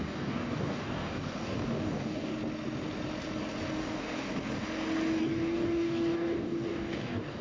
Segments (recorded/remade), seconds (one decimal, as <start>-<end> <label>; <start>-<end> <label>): 0.0-2.3 remade; 2.3-3.8 recorded; 3.8-4.3 remade; 4.3-5.2 recorded; 5.2-7.4 remade